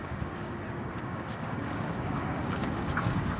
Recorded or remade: remade